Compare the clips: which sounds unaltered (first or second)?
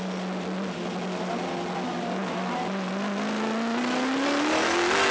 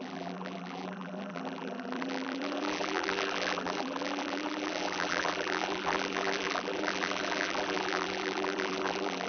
first